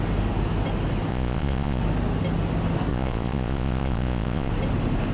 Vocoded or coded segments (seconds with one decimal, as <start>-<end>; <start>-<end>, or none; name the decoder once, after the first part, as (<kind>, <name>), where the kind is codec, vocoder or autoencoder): 1.1-1.8 (vocoder, Vocos); 2.9-4.5